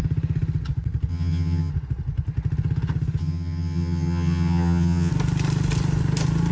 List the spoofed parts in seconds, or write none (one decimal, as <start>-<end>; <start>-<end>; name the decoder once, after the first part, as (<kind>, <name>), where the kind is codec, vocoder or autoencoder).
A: 1.1-1.7 (vocoder, HiFi-GAN); 3.2-5.1